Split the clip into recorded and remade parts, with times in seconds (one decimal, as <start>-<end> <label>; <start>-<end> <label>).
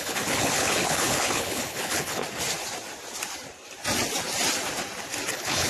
0.0-2.2 remade; 2.2-5.3 recorded; 5.3-5.7 remade